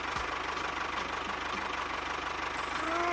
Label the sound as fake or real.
real